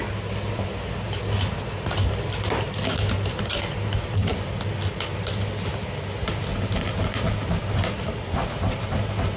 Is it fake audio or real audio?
real